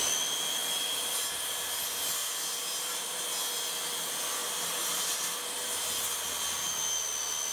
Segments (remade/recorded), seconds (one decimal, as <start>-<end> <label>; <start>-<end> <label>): 0.0-2.2 recorded; 2.2-3.2 remade; 3.2-7.5 recorded